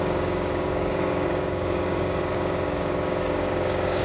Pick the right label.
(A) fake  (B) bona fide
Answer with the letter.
A